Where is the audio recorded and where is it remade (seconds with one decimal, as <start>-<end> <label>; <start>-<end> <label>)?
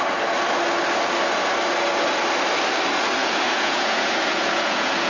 0.0-3.2 recorded; 3.2-5.1 remade